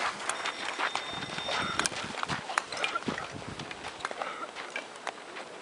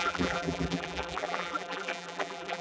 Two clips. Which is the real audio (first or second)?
first